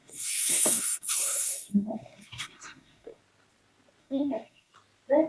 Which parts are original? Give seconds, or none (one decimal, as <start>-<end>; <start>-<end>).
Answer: 3.2-4.0; 4.7-5.3